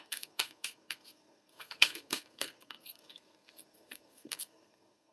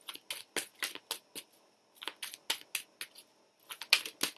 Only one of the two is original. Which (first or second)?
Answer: second